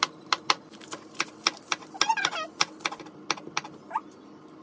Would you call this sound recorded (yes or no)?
yes